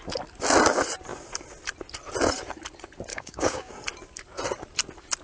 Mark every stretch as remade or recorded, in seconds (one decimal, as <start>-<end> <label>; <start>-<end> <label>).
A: 0.0-3.1 recorded; 3.1-3.7 remade; 3.7-5.2 recorded

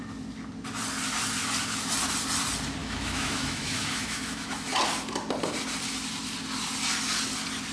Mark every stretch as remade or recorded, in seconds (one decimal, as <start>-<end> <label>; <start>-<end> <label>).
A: 0.0-2.8 recorded; 2.8-4.7 remade; 4.7-7.7 recorded

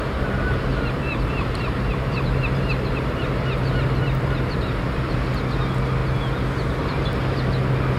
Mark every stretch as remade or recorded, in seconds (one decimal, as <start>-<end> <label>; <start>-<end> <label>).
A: 0.0-0.7 recorded; 0.7-5.0 remade; 5.0-8.0 recorded